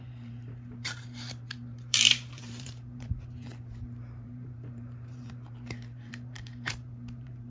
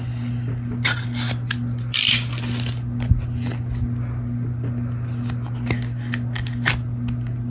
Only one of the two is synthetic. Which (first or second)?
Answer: first